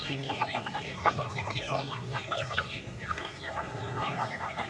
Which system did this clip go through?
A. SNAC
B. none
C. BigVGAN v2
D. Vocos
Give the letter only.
A